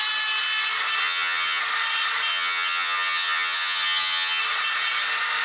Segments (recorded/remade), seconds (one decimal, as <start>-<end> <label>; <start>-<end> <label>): 0.0-1.0 recorded; 1.0-1.6 remade; 1.6-2.3 recorded; 2.3-4.4 remade; 4.4-5.4 recorded